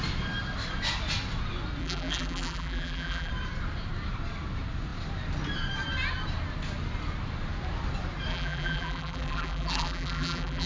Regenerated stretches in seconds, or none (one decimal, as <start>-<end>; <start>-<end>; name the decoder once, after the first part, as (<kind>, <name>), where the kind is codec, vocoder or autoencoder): 1.8-3.3 (vocoder, BigVGAN v2); 8.3-10.7